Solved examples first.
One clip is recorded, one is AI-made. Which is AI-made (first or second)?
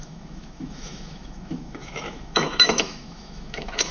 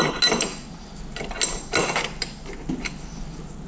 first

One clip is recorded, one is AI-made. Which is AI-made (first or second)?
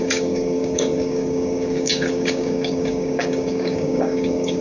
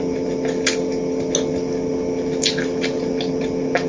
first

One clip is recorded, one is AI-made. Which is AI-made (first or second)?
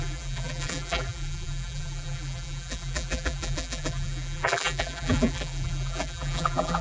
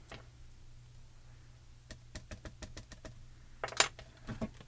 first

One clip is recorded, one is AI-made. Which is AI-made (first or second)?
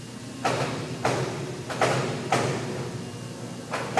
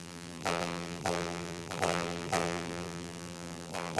second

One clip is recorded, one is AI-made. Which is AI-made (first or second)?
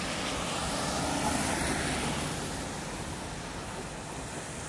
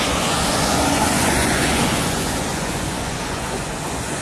second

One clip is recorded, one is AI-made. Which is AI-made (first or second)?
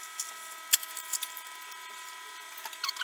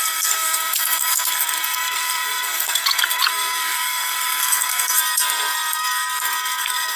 second